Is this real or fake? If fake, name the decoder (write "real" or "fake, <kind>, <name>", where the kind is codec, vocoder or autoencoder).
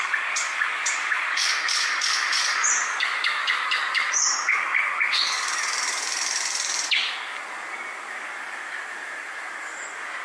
fake, codec, DAC